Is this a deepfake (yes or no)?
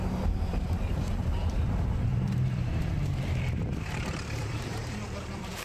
yes